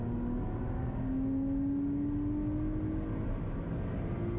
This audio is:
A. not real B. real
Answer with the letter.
B